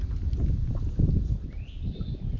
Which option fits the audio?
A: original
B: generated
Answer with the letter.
A